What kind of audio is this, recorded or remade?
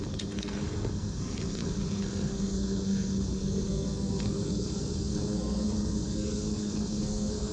remade